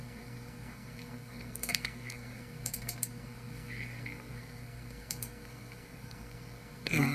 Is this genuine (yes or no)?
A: no